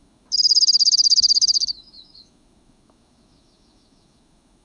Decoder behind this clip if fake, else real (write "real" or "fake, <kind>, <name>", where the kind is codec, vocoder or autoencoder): fake, autoencoder, DAC-VAE